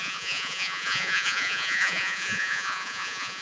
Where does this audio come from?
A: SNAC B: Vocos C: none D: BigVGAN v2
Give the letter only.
B